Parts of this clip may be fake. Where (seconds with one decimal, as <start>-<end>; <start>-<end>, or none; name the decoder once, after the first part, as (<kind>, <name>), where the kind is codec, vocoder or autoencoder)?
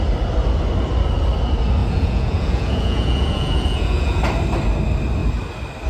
1.8-4.2 (vocoder, Vocos)